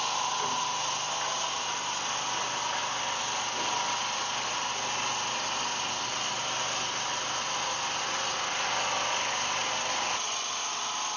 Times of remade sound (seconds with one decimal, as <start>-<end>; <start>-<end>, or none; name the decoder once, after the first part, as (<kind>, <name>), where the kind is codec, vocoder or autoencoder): none